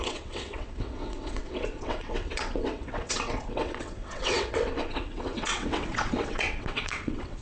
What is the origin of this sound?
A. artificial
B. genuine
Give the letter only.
A